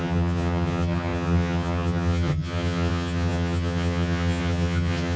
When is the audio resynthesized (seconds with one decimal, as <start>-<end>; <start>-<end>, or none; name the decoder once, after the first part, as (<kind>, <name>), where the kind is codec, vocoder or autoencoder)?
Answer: 0.0-5.2 (vocoder, HiFi-GAN)